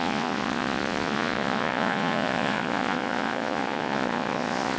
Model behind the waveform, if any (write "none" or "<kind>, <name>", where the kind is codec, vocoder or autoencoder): vocoder, Vocos